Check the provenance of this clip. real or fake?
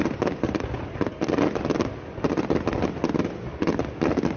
real